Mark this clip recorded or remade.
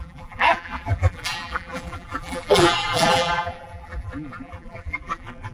remade